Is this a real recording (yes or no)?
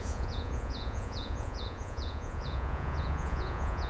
no